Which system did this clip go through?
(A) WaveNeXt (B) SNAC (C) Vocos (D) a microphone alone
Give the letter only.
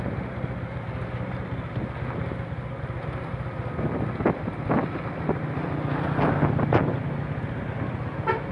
D